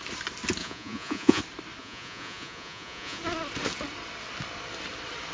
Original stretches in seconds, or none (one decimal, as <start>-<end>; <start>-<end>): 0.0-0.6; 1.4-1.8; 3.2-5.3